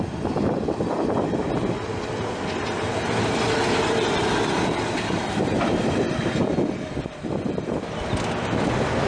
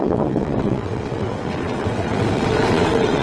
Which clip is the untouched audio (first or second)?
first